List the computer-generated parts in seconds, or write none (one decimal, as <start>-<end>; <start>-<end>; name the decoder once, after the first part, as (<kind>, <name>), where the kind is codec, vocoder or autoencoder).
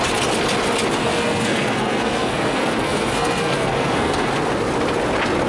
1.0-4.3 (codec, SNAC)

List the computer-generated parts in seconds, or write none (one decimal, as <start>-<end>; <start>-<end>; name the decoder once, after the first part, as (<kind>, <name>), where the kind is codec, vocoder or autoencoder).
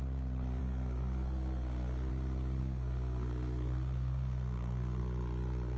0.6-2.1 (codec, SNAC); 2.6-5.0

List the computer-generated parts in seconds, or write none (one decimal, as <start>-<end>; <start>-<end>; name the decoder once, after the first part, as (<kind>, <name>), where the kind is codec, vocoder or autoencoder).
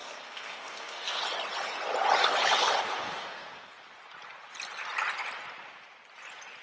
0.0-1.2 (codec, SNAC); 3.2-3.7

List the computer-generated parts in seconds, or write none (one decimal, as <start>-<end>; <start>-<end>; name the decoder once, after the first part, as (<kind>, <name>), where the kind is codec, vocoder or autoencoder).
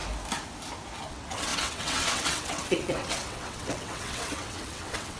1.1-5.2 (vocoder, WaveNeXt)